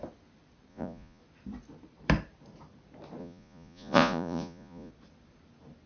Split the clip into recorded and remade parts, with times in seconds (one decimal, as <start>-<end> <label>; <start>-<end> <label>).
0.0-0.7 recorded; 0.7-1.2 remade; 1.2-3.2 recorded; 3.2-4.9 remade; 4.9-5.9 recorded